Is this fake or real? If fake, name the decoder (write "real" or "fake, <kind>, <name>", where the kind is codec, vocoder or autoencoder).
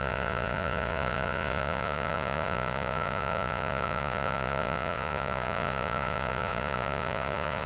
fake, vocoder, Vocos